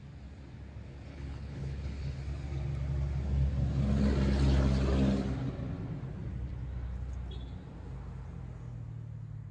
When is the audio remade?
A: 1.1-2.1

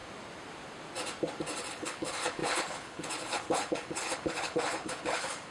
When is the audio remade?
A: 1.7-5.5

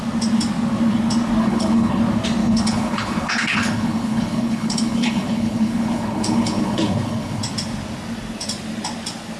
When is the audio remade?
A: 1.4-2.0; 2.4-7.4

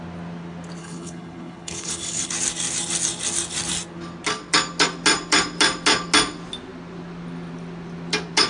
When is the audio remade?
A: 0.8-2.3

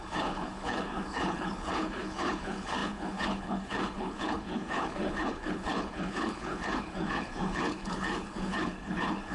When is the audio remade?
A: 0.0-9.3

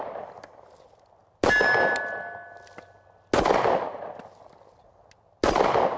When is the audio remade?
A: none

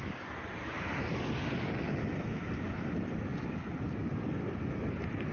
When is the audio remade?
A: none

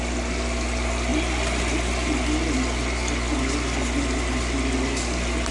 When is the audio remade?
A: none